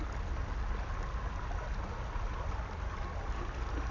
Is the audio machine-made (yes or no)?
no